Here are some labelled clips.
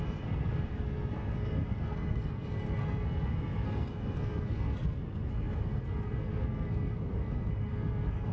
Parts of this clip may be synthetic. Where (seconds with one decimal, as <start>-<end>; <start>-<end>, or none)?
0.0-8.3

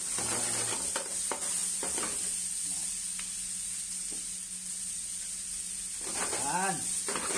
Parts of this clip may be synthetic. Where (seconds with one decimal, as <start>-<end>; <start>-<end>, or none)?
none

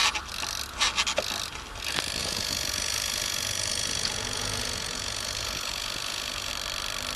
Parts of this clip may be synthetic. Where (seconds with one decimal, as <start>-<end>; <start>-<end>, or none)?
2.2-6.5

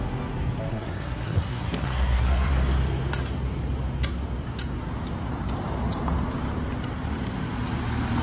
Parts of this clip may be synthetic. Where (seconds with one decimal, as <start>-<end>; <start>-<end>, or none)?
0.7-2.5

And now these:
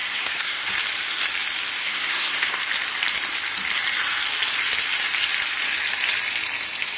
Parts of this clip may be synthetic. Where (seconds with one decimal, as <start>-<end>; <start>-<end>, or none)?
0.0-0.7; 1.8-2.6